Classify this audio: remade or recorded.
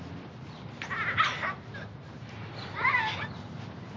recorded